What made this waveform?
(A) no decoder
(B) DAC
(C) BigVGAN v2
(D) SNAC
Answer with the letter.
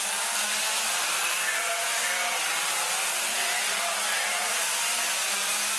C